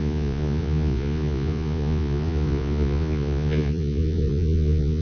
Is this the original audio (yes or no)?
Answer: no